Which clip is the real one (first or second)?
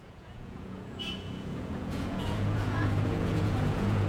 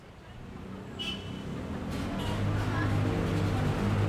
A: second